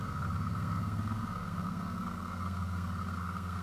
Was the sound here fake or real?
fake